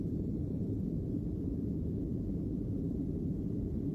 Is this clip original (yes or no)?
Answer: no